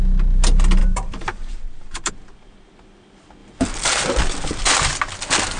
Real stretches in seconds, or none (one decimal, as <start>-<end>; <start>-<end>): 0.0-0.8; 2.1-3.4; 3.9-5.6